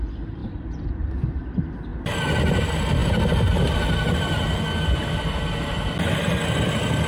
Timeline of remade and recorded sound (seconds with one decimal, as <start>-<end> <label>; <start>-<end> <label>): 0.0-0.4 recorded; 0.4-1.0 remade; 1.0-1.9 recorded; 1.9-2.6 remade; 2.6-7.1 recorded